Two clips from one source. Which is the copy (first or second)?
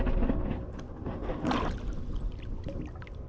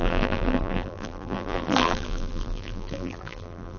second